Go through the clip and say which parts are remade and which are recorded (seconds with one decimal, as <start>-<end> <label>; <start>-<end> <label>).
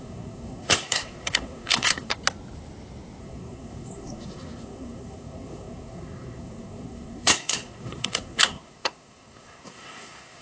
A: 0.0-2.1 remade; 2.1-3.2 recorded; 3.2-10.4 remade